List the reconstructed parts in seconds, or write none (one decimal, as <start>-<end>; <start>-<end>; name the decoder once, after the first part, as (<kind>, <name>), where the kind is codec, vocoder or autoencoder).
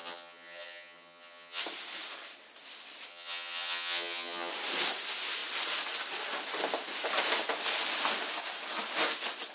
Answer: 0.0-1.6 (vocoder, HiFi-GAN); 3.1-4.5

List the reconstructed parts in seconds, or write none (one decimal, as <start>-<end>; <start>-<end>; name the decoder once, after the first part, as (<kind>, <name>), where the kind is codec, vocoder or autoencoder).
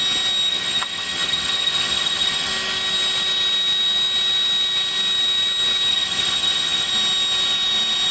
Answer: 0.5-2.5 (vocoder, HiFi-GAN); 5.9-6.9